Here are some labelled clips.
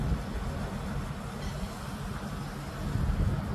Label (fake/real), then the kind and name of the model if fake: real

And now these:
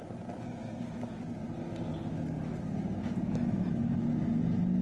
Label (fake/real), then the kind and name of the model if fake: real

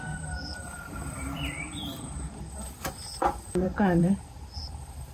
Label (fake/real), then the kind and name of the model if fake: fake, vocoder, BigVGAN v2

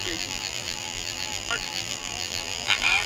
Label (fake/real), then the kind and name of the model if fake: fake, vocoder, BigVGAN v2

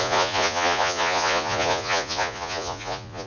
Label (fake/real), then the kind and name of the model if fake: fake, vocoder, Vocos